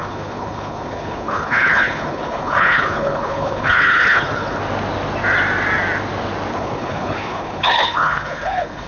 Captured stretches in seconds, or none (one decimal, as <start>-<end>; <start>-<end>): 4.6-6.5